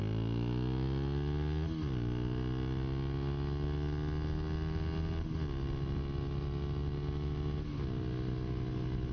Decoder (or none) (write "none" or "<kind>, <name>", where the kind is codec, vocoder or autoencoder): none